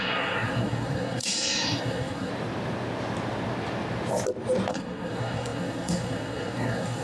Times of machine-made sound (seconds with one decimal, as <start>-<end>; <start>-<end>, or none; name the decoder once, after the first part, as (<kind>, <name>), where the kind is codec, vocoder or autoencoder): 0.0-2.3 (codec, SNAC); 4.7-7.0